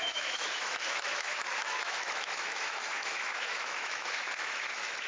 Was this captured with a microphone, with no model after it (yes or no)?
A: no